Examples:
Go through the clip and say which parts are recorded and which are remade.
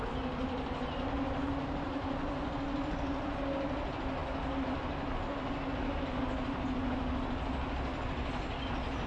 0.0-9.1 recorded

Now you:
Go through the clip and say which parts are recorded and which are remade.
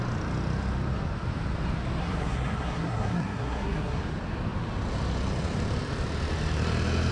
0.0-2.0 recorded; 2.0-4.0 remade; 4.0-7.1 recorded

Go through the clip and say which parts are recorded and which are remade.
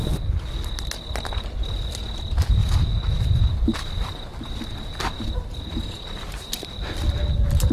0.0-2.6 recorded; 2.6-5.0 remade; 5.0-6.3 recorded; 6.3-7.3 remade; 7.3-7.7 recorded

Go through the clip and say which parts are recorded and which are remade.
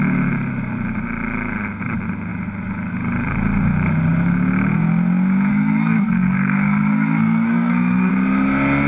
0.0-5.5 recorded; 5.5-8.1 remade; 8.1-8.9 recorded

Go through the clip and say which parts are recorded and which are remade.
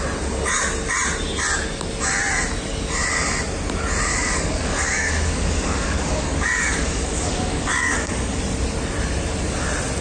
0.0-4.1 recorded; 4.1-8.4 remade; 8.4-10.0 recorded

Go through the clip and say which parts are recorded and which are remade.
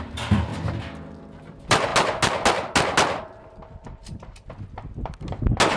0.0-0.5 remade; 0.5-1.2 recorded; 1.2-1.9 remade; 1.9-5.8 recorded